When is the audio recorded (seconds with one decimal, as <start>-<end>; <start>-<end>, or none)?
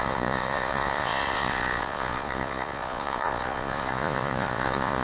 none